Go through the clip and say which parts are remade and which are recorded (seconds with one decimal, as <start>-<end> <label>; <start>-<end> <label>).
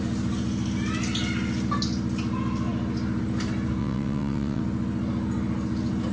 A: 0.0-3.8 recorded; 3.8-4.6 remade; 4.6-6.1 recorded